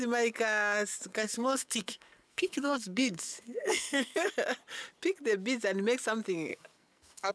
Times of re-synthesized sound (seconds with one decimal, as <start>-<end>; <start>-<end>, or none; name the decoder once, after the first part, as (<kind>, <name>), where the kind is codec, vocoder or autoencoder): 1.1-4.3 (codec, SNAC); 6.5-7.3